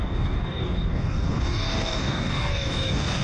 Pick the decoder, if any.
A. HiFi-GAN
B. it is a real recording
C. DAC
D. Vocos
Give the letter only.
C